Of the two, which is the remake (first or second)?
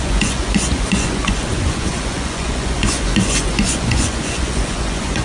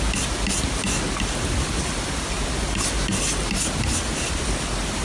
first